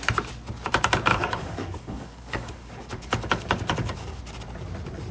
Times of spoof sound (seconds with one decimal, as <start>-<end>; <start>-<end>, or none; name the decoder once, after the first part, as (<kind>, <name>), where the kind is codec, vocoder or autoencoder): 1.1-4.2 (codec, DAC)